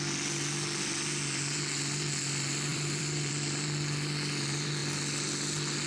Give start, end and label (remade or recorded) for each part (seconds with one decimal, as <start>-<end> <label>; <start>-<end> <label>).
0.0-2.7 recorded; 2.7-3.3 remade; 3.3-5.9 recorded